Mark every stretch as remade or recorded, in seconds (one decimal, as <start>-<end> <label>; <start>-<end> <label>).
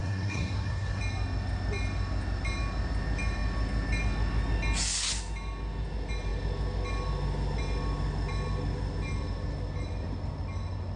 0.0-1.0 remade; 1.0-11.0 recorded